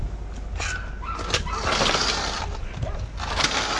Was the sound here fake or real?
real